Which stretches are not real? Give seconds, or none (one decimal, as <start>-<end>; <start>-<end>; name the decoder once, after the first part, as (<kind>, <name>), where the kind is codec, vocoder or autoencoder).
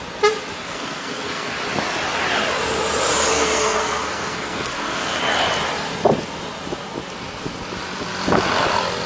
0.6-1.5 (codec, SNAC); 3.3-5.2